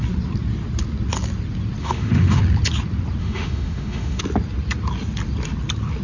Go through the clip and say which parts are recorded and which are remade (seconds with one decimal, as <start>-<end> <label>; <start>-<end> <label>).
0.0-1.8 recorded; 1.8-2.4 remade; 2.4-3.2 recorded; 3.2-4.2 remade; 4.2-6.0 recorded